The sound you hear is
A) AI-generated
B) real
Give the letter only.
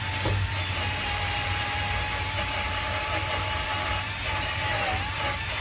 B